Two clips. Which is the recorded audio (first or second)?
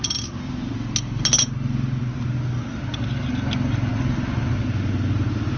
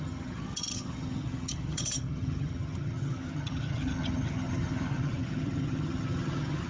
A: first